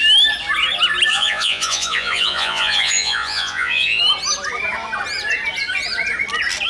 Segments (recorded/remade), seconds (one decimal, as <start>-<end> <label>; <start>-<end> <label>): 0.0-1.1 recorded; 1.1-4.0 remade; 4.0-6.7 recorded